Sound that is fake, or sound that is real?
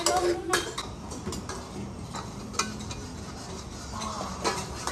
real